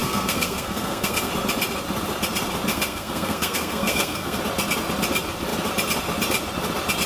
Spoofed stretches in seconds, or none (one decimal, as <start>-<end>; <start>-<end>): 0.0-1.3; 2.7-4.4